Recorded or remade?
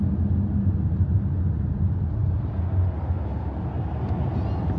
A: recorded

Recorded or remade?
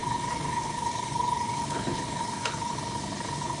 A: remade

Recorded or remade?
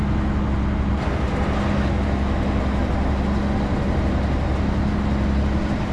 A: recorded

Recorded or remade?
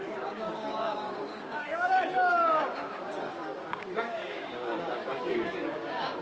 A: remade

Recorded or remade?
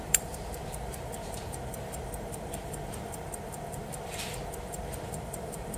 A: remade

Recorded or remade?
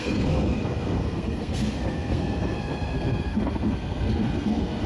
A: remade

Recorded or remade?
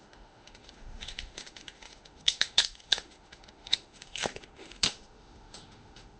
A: remade